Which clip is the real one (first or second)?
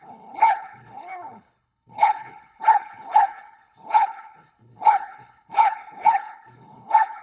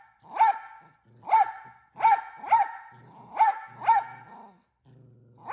second